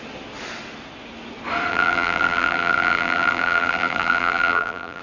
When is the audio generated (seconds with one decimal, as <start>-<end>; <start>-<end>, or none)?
1.7-5.0